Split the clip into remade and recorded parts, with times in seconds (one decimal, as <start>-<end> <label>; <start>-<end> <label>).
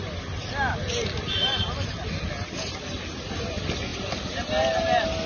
0.0-5.3 recorded